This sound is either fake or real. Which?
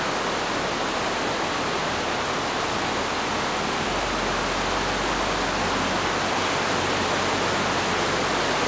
real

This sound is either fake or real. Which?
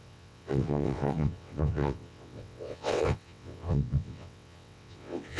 fake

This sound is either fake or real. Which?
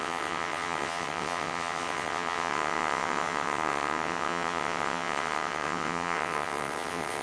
fake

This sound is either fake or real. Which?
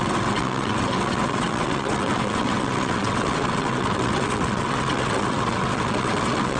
fake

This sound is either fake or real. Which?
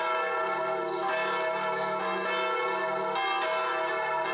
real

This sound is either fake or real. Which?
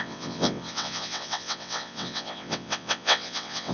fake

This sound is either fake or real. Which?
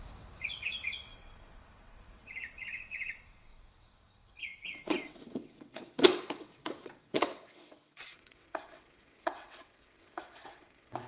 fake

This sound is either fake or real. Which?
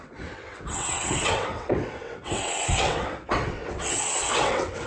fake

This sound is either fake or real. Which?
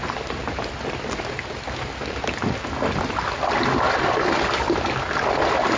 real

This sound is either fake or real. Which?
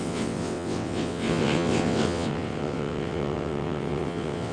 fake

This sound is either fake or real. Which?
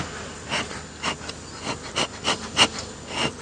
real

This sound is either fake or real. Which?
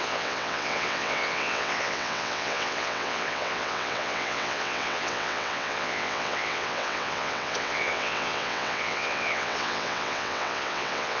fake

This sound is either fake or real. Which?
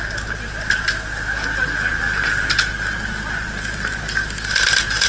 real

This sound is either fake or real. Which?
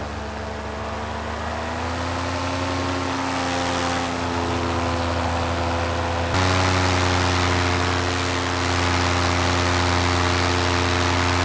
real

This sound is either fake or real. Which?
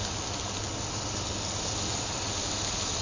real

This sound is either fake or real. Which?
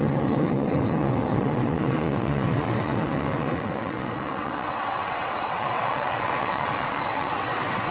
fake